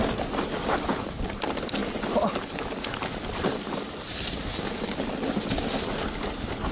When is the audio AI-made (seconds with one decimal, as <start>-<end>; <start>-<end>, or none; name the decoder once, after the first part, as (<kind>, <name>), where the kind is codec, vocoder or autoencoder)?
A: none

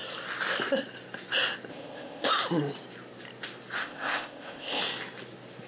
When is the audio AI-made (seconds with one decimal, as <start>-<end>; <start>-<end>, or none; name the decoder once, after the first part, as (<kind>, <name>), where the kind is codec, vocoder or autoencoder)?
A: 1.7-2.3 (codec, ZipCodec); 3.8-4.8

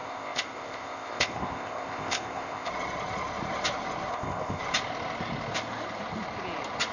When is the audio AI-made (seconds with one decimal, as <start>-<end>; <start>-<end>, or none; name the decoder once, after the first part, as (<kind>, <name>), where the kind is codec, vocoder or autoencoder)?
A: 0.0-2.7 (codec, ZipCodec); 4.1-4.6

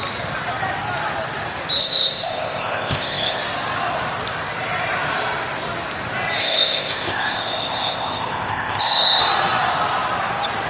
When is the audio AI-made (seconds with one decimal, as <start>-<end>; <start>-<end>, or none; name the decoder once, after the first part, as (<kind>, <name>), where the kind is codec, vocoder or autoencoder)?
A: 1.8-3.4 (codec, ZipCodec); 6.4-9.2